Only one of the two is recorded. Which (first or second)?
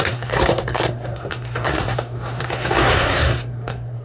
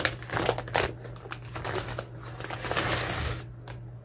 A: second